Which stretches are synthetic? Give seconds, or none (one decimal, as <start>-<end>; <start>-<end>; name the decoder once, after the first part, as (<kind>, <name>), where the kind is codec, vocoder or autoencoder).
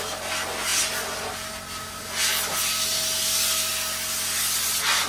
none